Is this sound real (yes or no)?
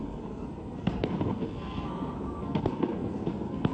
no